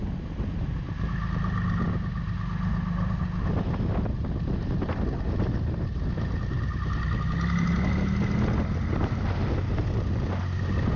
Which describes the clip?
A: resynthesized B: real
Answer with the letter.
B